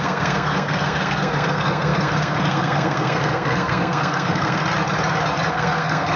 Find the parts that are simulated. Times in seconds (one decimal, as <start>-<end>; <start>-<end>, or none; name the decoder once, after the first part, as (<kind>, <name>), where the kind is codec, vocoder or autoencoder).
0.0-4.6 (codec, SNAC); 5.5-6.2